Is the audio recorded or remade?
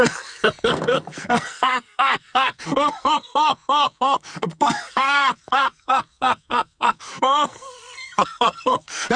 remade